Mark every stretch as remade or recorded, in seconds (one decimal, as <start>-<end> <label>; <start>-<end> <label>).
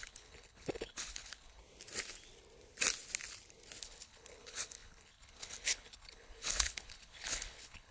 0.0-1.6 remade; 1.6-3.8 recorded; 3.8-7.9 remade